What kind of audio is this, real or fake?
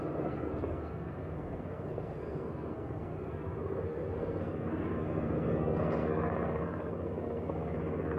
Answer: fake